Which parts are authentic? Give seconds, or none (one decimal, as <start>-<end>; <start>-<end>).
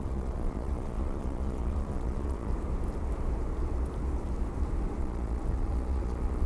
2.5-5.0